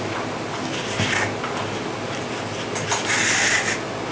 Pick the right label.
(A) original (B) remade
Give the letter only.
A